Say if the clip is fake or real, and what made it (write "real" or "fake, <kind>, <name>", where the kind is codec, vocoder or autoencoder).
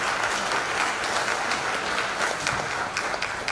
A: real